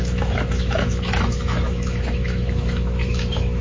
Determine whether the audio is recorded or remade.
remade